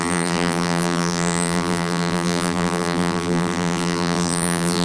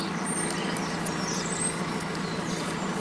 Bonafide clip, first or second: second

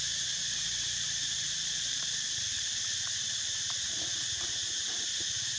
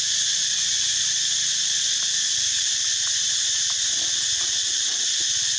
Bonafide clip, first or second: second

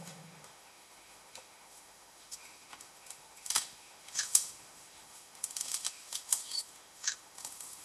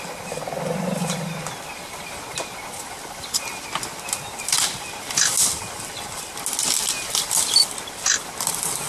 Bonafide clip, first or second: second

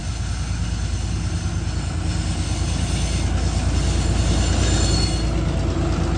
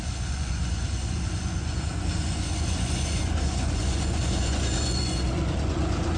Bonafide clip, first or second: first